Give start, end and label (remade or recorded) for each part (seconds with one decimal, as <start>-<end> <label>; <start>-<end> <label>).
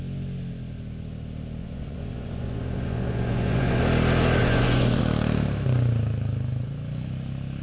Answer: 0.0-1.6 recorded; 1.6-3.8 remade; 3.8-4.4 recorded; 4.4-5.0 remade; 5.0-7.6 recorded